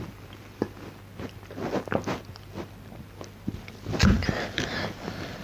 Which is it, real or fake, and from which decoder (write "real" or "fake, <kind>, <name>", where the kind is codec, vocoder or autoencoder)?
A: real